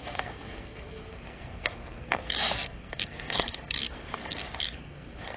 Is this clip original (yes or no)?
no